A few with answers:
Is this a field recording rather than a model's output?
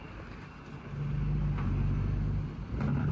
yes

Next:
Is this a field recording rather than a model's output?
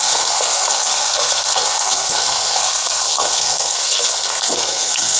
no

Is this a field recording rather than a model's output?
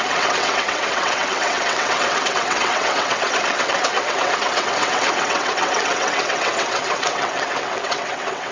no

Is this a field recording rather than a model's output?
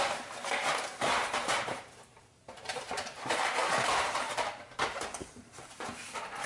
no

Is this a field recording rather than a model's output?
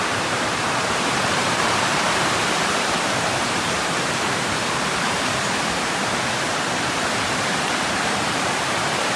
no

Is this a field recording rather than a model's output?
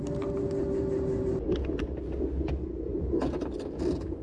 yes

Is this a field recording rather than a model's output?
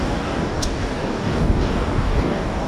no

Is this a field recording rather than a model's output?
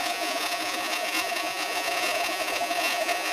no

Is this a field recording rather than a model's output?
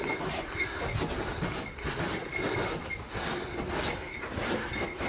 yes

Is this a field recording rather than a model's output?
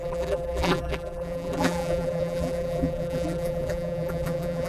no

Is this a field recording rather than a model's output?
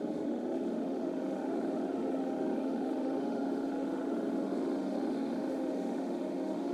no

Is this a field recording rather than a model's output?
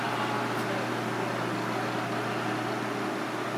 yes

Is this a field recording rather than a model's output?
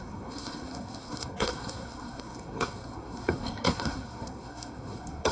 no